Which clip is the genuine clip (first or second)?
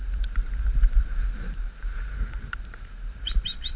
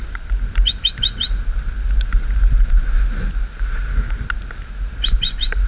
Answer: second